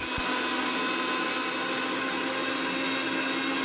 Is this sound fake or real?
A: real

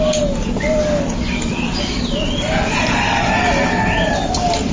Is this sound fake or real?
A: real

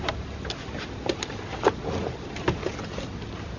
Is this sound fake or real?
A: real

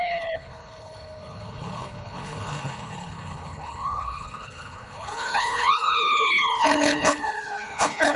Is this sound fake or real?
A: fake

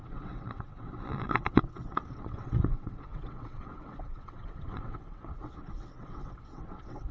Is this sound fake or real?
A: fake